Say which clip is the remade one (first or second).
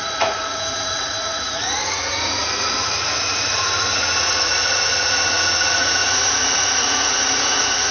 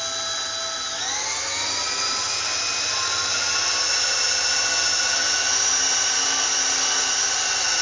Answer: first